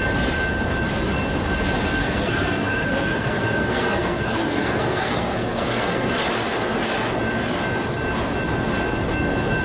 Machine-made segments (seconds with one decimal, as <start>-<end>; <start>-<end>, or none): 1.9-6.1